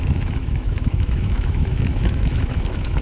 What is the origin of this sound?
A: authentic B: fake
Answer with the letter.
B